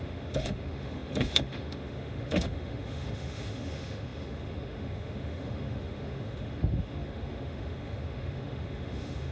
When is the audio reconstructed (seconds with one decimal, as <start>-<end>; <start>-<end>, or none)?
0.0-9.3